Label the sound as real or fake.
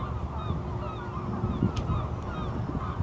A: real